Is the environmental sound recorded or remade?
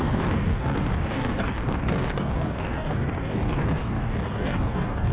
remade